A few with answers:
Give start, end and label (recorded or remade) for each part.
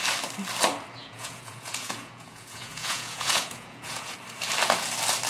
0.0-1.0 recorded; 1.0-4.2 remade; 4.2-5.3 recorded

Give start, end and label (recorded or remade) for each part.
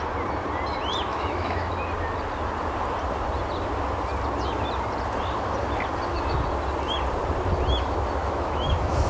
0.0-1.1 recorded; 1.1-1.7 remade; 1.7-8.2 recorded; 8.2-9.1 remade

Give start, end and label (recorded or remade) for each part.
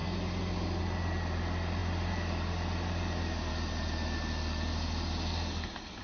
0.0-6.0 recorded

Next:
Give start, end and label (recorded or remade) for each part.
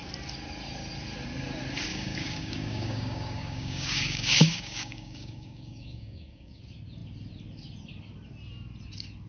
0.0-1.9 recorded; 1.9-6.6 remade; 6.6-9.3 recorded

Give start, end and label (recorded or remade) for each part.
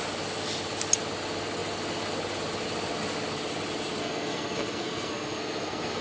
0.0-4.0 recorded; 4.0-6.0 remade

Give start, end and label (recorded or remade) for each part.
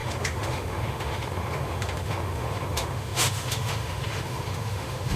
0.0-5.2 remade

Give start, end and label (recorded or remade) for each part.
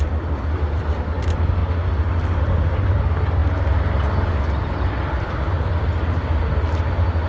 0.0-1.6 remade; 1.6-2.1 recorded; 2.1-3.4 remade; 3.4-4.3 recorded; 4.3-7.3 remade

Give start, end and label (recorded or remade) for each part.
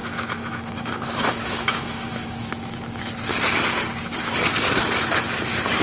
0.0-2.5 remade; 2.5-5.8 recorded